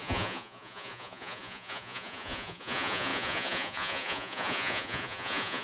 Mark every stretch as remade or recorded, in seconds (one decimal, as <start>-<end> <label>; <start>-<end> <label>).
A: 0.0-5.6 remade